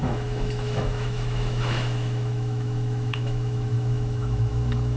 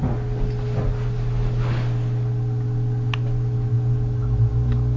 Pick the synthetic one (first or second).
first